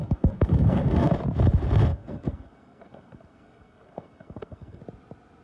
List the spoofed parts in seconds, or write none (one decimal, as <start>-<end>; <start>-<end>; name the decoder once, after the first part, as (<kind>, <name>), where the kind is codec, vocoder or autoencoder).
0.0-1.1 (codec, SNAC); 1.9-4.8